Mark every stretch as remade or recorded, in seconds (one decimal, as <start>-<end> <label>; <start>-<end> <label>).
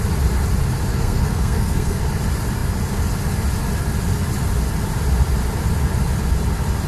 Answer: 0.0-0.9 recorded; 0.9-2.0 remade; 2.0-6.9 recorded